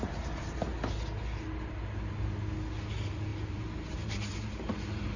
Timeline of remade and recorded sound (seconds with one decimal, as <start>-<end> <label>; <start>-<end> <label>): 0.0-0.7 remade; 0.7-2.9 recorded; 2.9-5.2 remade